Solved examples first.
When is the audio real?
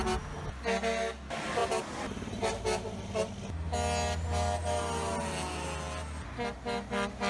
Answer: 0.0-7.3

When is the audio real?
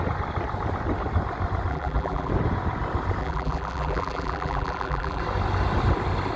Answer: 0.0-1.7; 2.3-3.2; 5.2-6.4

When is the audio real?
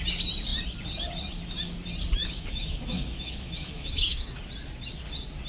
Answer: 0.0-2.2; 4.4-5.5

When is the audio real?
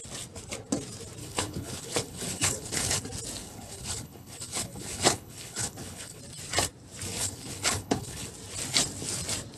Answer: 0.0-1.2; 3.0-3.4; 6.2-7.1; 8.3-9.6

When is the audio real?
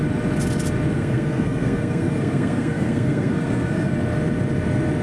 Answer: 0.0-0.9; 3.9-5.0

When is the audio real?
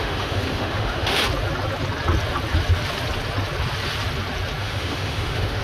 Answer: 1.2-4.6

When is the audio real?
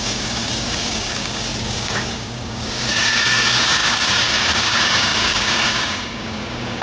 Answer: none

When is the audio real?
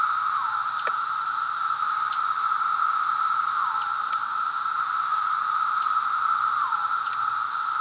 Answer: 0.0-7.8